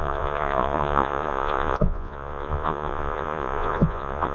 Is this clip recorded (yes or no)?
no